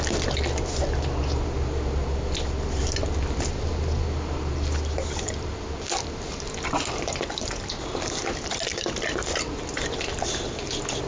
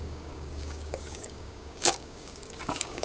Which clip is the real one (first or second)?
first